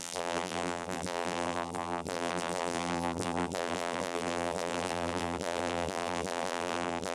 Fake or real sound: fake